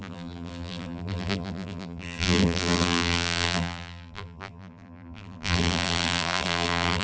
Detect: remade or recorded remade